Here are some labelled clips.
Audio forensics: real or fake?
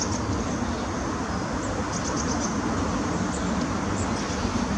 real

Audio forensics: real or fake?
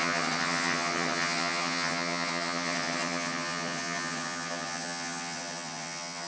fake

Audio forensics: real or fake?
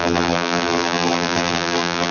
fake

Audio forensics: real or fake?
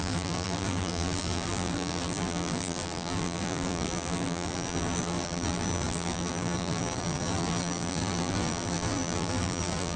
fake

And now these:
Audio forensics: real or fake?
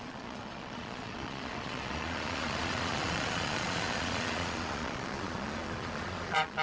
fake